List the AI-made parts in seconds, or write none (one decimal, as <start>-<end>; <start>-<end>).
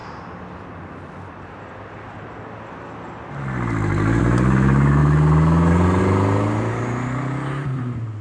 none